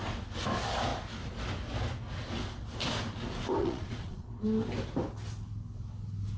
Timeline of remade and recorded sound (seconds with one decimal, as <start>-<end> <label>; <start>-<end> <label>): 0.0-3.6 recorded; 3.6-4.3 remade; 4.3-6.4 recorded